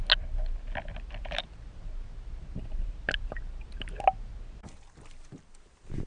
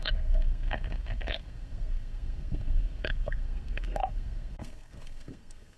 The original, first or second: first